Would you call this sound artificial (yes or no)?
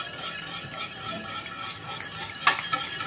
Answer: no